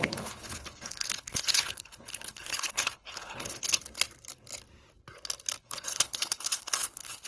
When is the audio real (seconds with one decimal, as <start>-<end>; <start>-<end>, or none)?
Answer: 3.8-5.6